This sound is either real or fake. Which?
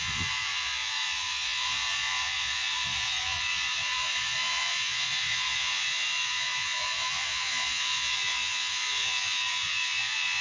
fake